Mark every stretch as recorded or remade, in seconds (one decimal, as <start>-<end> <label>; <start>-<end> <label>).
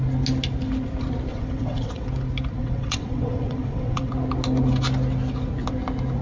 0.0-1.3 recorded; 1.3-2.1 remade; 2.1-2.6 recorded; 2.6-4.1 remade; 4.1-6.2 recorded